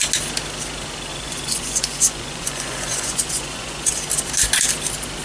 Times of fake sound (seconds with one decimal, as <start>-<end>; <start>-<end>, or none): 1.1-4.1